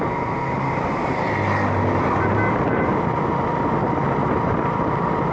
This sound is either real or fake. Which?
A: real